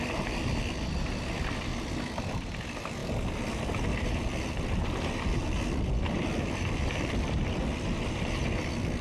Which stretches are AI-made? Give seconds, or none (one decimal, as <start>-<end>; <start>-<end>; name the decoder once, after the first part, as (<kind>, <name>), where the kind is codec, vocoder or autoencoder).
0.0-1.7 (vocoder, BigVGAN v2); 2.3-9.0